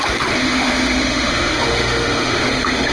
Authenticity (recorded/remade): remade